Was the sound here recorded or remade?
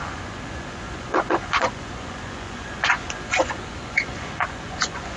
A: remade